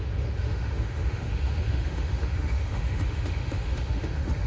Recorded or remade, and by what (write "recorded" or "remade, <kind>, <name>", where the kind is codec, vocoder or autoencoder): remade, autoencoder, DAC-VAE